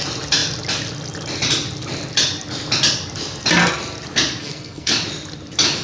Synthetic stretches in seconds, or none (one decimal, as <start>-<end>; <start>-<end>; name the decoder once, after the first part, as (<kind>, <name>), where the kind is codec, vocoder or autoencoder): 4.4-4.9 (codec, SNAC)